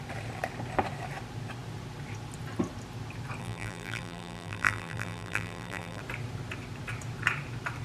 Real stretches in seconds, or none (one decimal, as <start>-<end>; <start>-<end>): 0.0-3.4; 6.0-7.8